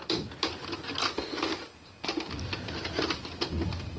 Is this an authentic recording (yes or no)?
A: yes